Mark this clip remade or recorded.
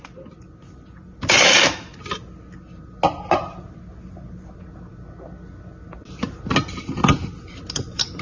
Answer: recorded